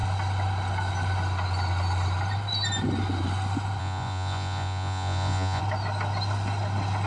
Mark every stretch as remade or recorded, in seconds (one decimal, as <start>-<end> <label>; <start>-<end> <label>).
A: 0.0-3.8 recorded; 3.8-5.6 remade; 5.6-7.1 recorded